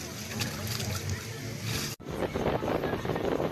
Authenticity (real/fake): real